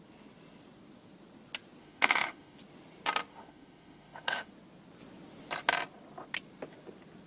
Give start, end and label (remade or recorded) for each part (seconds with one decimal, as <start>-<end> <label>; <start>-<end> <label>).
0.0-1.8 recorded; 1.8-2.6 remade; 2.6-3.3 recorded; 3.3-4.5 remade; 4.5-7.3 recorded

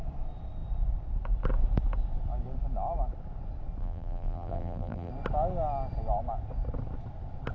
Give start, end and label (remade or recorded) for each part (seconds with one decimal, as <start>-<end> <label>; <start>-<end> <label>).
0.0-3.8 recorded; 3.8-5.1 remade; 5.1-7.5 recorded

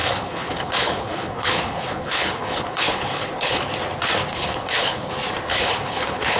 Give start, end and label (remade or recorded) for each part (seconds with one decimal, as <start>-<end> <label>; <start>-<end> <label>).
0.0-3.6 remade; 3.6-4.3 recorded; 4.3-5.1 remade; 5.1-5.5 recorded; 5.5-6.4 remade

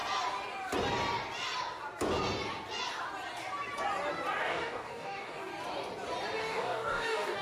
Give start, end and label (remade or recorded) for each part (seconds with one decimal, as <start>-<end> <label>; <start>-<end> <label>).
0.0-4.4 recorded; 4.4-5.5 remade; 5.5-6.4 recorded; 6.4-7.4 remade

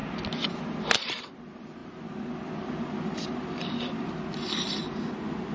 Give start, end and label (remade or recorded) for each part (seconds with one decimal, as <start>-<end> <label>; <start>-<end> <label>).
0.0-5.5 recorded

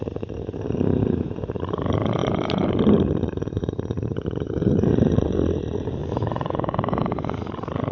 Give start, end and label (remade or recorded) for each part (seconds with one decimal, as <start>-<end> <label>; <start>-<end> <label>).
0.0-7.9 remade